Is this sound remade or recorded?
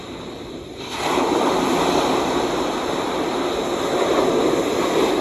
recorded